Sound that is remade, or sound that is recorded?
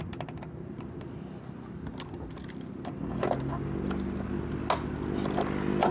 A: recorded